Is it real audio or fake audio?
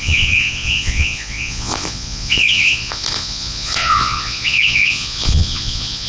fake